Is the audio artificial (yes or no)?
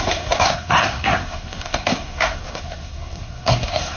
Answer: yes